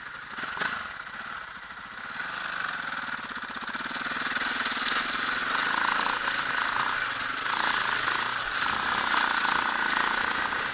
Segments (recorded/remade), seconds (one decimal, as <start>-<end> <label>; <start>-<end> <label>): 0.0-10.7 recorded